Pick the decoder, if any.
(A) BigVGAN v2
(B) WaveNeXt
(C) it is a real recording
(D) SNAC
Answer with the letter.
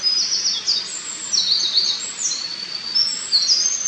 C